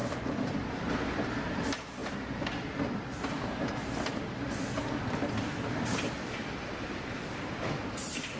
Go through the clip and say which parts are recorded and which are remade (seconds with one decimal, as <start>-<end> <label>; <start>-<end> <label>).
0.0-8.4 recorded